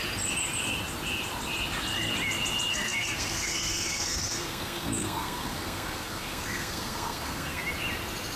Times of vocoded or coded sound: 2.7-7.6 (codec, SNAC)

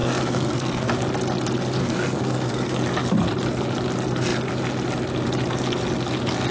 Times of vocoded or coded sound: 0.0-0.9 (codec, SNAC); 1.8-2.8

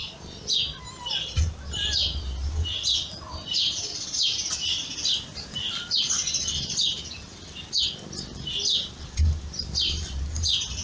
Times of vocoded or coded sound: none

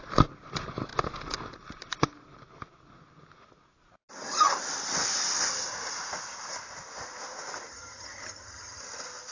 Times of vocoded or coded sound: 7.7-8.8 (vocoder, HiFi-GAN)